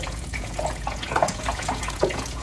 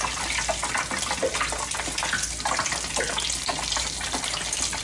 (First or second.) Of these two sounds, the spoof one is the first